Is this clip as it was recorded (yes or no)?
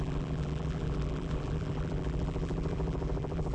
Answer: no